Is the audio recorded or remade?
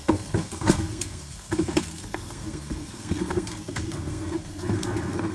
remade